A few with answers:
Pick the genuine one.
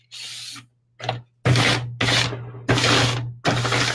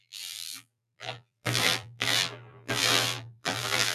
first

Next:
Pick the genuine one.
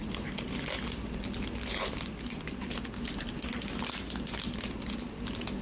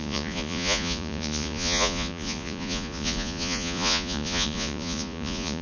first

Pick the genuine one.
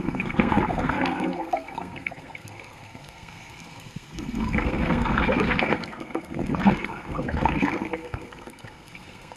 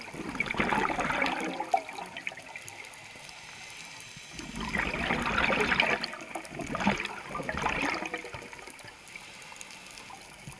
second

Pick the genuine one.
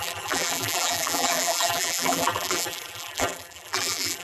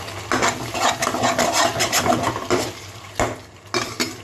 second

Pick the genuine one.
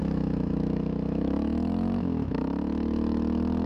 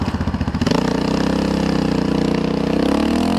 second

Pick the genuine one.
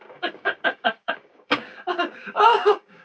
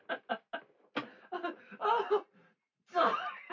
second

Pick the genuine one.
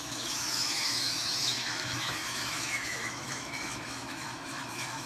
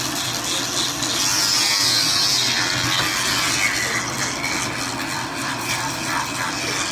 second